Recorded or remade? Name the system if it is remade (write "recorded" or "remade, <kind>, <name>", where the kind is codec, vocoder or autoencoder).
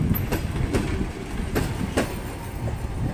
recorded